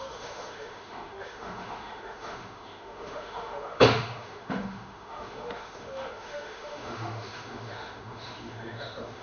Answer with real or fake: fake